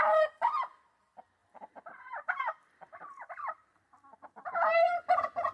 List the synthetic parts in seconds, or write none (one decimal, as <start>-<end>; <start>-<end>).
none